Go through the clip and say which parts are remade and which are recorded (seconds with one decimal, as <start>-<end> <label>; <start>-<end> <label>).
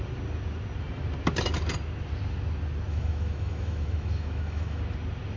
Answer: 0.0-2.9 recorded; 2.9-4.8 remade; 4.8-5.4 recorded